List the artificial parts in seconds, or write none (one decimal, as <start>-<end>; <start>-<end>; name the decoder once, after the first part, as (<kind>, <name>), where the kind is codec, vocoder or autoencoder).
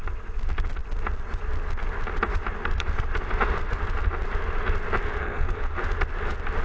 5.2-5.8 (codec, SNAC)